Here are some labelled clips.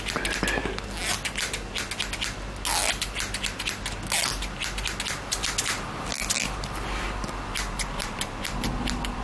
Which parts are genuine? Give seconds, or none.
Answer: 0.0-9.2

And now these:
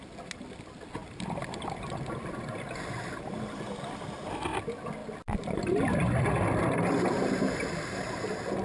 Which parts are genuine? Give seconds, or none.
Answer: 0.0-1.0; 3.0-8.6

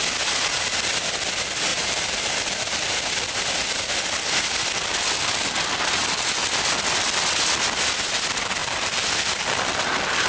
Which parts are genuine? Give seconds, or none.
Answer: 0.0-1.7; 3.0-8.6; 9.1-10.3

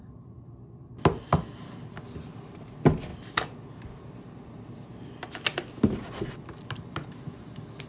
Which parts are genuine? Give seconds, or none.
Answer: 0.0-7.9

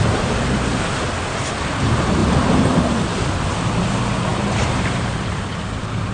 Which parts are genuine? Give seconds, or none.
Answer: 0.0-4.3; 5.6-6.1